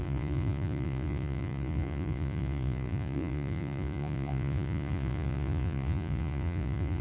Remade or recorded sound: remade